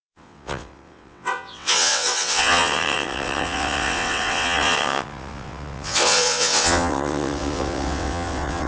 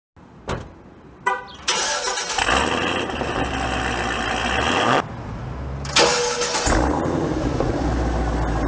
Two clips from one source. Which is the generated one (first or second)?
first